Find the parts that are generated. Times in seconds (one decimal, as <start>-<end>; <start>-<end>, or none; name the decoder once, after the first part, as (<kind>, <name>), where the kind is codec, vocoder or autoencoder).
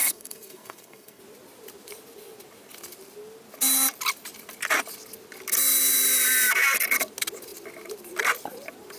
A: 0.0-1.2 (codec, SNAC)